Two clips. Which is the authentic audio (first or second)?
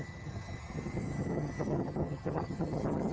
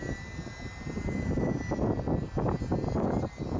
second